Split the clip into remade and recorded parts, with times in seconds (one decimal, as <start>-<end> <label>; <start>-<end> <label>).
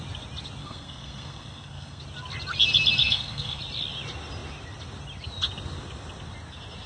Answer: 0.0-0.6 recorded; 0.6-2.0 remade; 2.0-3.0 recorded; 3.0-3.6 remade; 3.6-6.9 recorded